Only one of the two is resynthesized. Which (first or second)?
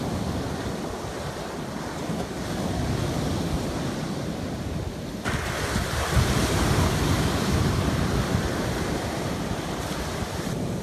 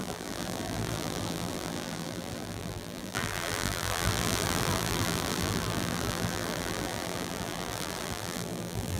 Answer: second